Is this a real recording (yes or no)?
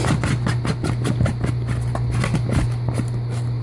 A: yes